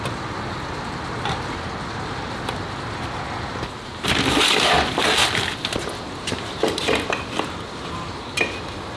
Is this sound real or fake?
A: real